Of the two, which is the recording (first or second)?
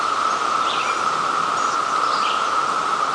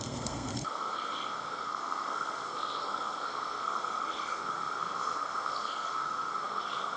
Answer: first